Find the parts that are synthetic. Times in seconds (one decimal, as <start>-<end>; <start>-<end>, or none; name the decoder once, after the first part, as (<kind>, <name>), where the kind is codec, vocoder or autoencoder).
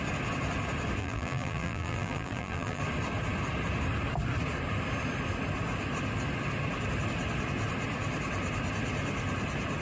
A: 1.0-2.8 (vocoder, BigVGAN v2)